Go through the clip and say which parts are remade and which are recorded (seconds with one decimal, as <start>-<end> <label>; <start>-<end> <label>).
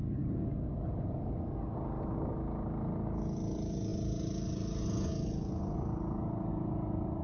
0.0-7.2 recorded